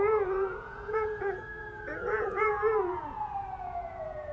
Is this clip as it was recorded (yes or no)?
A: no